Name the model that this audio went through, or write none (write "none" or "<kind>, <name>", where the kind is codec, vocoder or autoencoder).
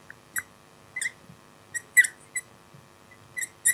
none